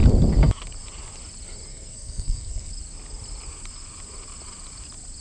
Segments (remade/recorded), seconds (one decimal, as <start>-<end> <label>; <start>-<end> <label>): 0.0-1.7 recorded; 1.7-2.7 remade; 2.7-5.2 recorded